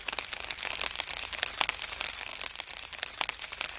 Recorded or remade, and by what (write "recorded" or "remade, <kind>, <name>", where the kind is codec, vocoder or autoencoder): recorded